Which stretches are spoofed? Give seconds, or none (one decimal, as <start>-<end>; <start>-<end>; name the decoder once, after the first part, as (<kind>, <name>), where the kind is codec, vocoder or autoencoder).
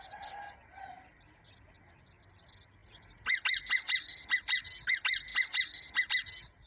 none